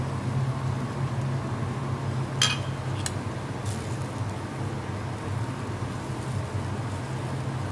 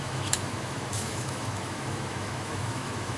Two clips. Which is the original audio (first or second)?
first